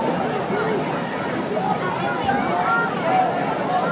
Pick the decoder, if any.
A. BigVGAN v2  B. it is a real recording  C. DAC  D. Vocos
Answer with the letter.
B